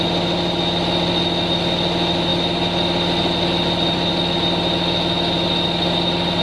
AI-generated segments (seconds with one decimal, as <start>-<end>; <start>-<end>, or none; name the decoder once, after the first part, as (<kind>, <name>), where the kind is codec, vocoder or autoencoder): none